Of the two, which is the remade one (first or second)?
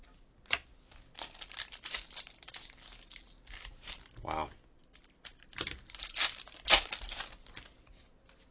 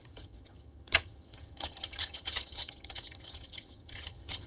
second